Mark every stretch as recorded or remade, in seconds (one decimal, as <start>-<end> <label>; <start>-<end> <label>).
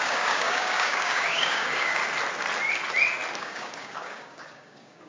0.0-2.0 remade; 2.0-3.4 recorded; 3.4-5.1 remade